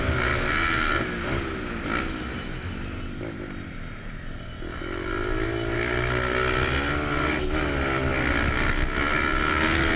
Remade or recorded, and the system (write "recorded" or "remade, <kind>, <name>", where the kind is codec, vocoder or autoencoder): recorded